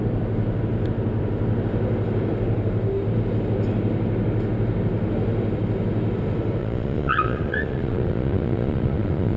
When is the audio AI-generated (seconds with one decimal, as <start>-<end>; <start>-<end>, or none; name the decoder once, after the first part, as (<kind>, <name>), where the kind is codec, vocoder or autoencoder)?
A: 6.6-9.4 (vocoder, Vocos)